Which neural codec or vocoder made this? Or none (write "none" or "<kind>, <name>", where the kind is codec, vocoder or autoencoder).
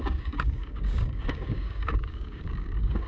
codec, DAC